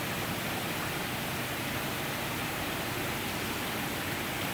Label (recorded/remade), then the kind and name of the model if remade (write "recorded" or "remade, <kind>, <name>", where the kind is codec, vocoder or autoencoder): recorded